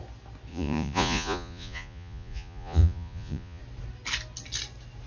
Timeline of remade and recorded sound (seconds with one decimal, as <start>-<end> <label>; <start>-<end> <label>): 0.0-0.5 recorded; 0.5-3.6 remade; 3.6-5.1 recorded